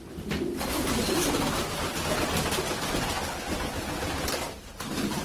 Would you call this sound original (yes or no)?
yes